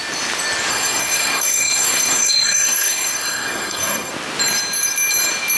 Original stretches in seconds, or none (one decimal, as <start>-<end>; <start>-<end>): 0.0-0.7; 4.1-5.6